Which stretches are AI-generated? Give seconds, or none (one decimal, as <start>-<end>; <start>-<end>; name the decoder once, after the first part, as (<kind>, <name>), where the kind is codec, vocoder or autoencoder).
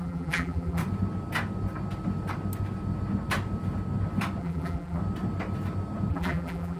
0.0-0.8 (vocoder, BigVGAN v2); 4.4-5.0; 6.1-6.8